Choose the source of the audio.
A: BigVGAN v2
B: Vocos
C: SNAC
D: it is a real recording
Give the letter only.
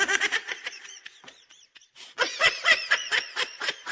B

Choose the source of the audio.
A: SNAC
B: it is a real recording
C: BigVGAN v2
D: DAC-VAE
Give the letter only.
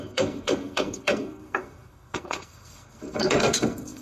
A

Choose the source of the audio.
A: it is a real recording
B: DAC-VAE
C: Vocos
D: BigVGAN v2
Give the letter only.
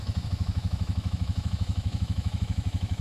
B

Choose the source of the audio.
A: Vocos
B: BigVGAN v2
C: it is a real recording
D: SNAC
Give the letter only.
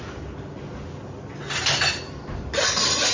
C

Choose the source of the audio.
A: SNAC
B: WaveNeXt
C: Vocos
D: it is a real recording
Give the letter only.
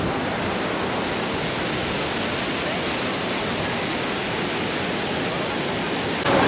D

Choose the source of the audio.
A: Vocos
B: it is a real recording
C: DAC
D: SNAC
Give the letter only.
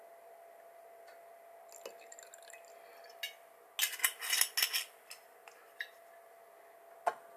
B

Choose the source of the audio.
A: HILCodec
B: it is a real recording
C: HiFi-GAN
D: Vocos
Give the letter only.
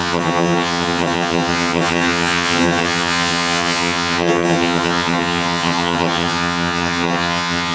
C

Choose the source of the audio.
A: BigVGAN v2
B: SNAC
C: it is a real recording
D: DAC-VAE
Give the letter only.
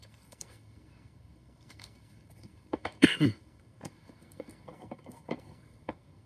B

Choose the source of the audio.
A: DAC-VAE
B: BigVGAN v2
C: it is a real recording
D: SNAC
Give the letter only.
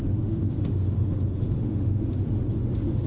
A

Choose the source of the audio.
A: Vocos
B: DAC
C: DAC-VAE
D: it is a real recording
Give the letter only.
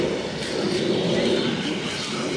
D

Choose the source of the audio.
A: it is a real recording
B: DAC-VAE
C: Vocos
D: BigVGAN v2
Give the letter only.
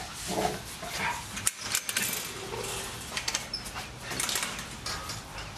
A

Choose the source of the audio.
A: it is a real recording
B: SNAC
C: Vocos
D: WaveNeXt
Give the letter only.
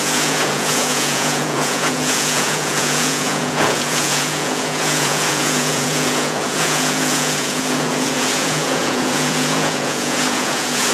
C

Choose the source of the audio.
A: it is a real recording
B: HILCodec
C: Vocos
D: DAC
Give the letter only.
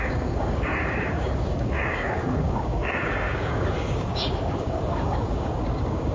D